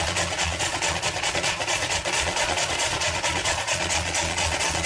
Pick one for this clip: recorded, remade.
remade